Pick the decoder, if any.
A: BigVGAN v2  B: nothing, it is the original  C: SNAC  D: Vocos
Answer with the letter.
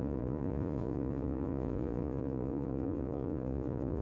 D